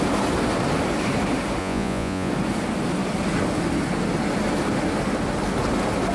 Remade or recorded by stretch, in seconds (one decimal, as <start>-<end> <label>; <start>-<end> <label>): 0.0-1.6 recorded; 1.6-2.3 remade; 2.3-6.1 recorded